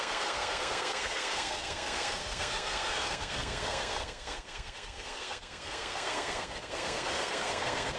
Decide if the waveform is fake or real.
fake